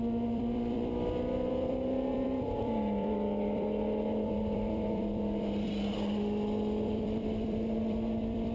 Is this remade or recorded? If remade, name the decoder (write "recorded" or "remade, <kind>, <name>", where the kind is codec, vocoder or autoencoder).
remade, vocoder, BigVGAN v2